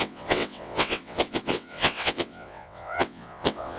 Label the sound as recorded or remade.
remade